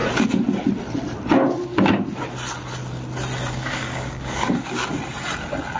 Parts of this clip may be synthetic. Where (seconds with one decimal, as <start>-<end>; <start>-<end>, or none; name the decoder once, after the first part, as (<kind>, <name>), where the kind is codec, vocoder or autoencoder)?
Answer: 3.5-4.8 (codec, DAC)